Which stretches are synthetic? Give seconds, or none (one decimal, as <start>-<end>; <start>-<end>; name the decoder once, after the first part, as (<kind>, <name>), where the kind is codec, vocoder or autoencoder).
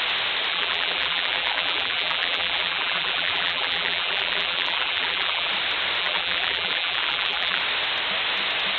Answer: 0.5-5.5 (vocoder, BigVGAN v2); 6.0-7.6